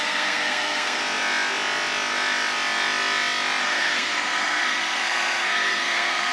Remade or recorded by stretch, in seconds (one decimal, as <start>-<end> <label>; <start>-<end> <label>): 0.0-1.0 remade; 1.0-3.6 recorded; 3.6-6.3 remade